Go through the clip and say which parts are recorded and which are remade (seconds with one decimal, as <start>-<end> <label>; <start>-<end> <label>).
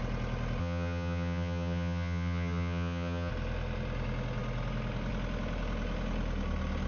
0.0-0.6 recorded; 0.6-3.3 remade; 3.3-6.9 recorded